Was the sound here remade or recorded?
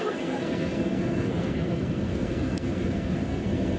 remade